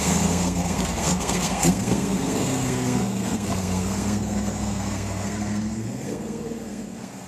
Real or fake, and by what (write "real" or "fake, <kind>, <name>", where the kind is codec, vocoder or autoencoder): fake, codec, SNAC